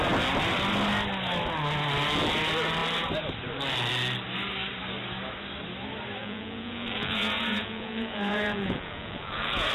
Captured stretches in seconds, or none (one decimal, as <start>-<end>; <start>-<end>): 0.0-6.2